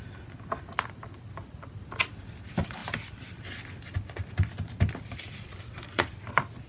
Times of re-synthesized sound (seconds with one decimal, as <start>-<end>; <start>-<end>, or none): none